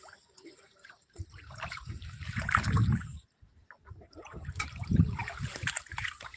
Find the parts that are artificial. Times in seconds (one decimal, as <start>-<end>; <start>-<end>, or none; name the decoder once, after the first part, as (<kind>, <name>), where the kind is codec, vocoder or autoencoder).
0.0-2.8 (vocoder, BigVGAN v2); 4.1-6.4